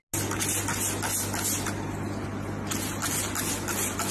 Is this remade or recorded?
recorded